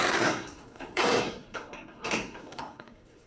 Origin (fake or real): fake